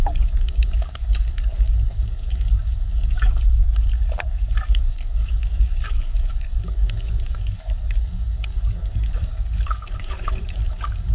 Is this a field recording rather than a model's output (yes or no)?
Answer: no